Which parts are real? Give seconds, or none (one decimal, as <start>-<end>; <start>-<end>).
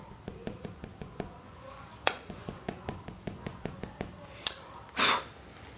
0.0-0.4; 3.9-5.8